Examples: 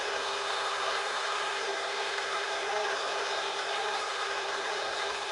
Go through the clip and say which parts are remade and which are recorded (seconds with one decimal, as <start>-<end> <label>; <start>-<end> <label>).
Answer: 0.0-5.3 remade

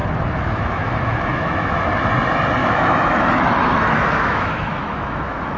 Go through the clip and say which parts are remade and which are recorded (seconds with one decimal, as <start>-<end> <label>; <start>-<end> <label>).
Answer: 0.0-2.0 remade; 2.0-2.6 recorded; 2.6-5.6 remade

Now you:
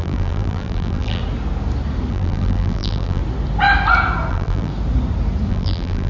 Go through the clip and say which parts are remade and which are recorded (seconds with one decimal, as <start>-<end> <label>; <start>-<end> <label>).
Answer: 0.0-1.2 remade; 1.2-2.1 recorded; 2.1-3.2 remade; 3.2-4.3 recorded; 4.3-4.7 remade; 4.7-5.5 recorded; 5.5-6.1 remade

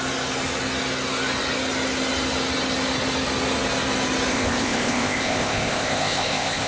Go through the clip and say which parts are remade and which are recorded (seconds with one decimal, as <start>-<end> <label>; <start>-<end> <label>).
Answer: 0.0-4.3 recorded; 4.3-6.7 remade

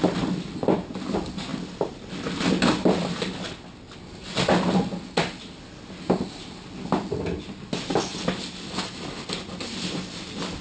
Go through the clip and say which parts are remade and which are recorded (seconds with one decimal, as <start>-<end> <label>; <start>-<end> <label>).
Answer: 0.0-10.6 recorded

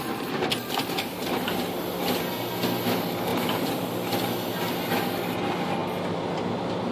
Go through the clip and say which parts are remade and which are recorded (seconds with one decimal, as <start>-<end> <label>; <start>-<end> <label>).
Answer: 0.0-3.3 recorded; 3.3-3.9 remade; 3.9-6.9 recorded